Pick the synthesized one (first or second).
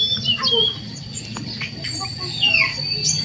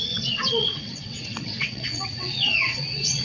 second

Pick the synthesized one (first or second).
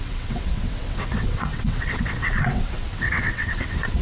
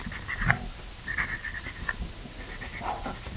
first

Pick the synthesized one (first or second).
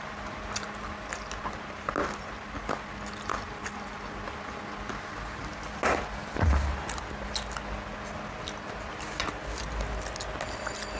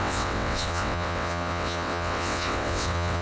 second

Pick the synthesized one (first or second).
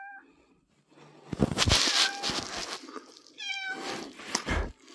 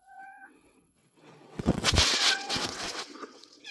second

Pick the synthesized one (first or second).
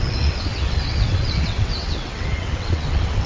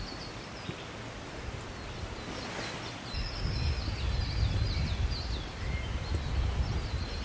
first